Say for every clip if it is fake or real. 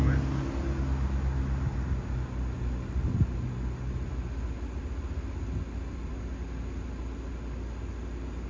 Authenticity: real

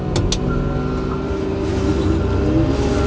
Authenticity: real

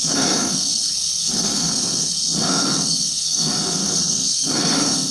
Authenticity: fake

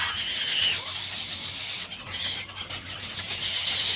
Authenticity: real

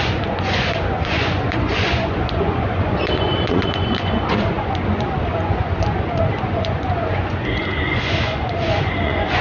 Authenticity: fake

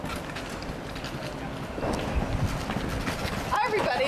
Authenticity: real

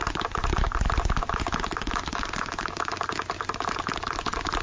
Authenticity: real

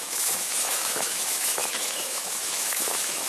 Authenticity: fake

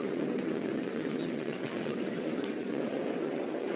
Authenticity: fake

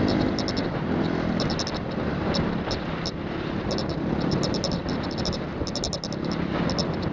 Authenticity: real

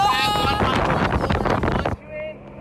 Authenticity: real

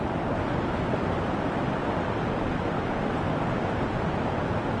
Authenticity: real